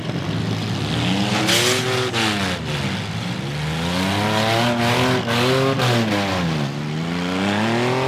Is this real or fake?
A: real